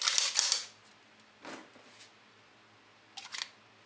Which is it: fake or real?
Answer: real